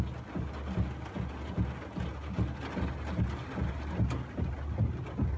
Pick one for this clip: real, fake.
real